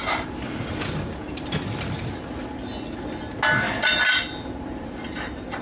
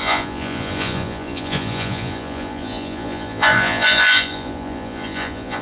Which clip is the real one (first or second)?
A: first